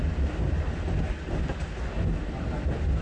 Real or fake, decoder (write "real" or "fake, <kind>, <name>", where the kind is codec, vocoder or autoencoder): real